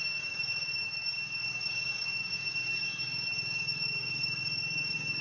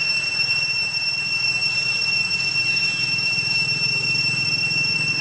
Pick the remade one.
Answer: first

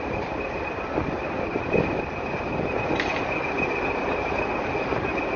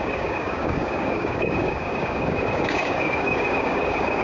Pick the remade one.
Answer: second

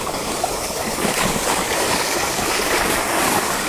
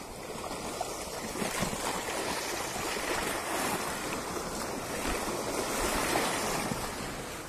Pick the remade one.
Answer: first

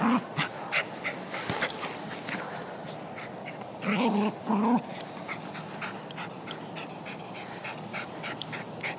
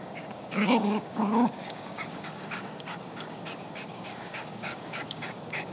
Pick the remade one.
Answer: second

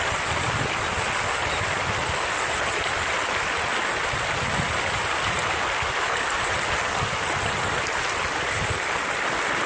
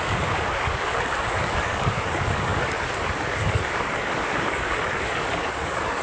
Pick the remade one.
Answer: second